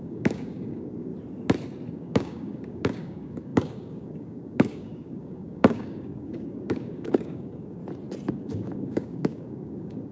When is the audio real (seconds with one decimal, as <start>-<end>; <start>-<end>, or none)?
1.1-1.9; 7.8-8.3